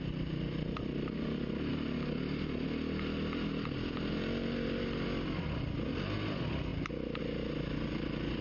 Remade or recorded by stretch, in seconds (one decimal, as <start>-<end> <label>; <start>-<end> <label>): 0.0-8.4 recorded